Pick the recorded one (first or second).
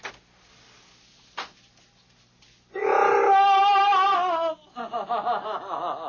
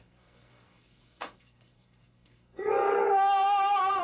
first